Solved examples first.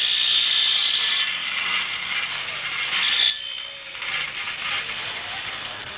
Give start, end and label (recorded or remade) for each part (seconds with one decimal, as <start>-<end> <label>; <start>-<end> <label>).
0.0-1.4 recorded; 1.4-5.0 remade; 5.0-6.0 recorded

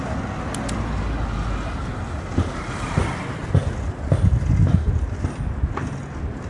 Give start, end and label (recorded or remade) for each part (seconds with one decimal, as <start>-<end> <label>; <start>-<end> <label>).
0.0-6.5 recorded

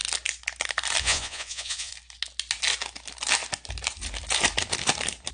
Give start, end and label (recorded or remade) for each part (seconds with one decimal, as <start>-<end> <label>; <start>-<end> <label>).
0.0-1.0 recorded; 1.0-1.9 remade; 1.9-5.3 recorded

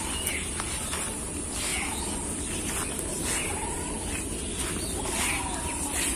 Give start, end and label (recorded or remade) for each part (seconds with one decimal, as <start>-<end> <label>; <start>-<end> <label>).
0.0-6.2 recorded

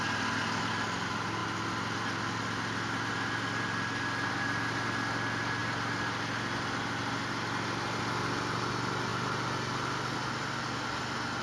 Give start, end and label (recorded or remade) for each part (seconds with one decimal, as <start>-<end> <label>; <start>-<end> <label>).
0.0-11.4 recorded